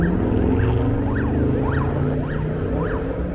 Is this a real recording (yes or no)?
yes